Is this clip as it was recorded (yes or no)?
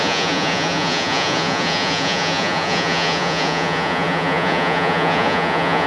no